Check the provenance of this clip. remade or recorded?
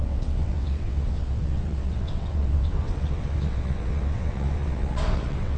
remade